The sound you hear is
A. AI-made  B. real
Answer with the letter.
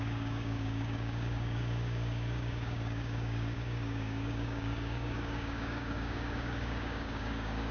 A